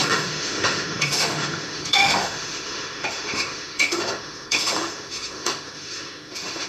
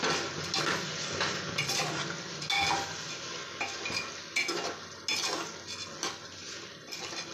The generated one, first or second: first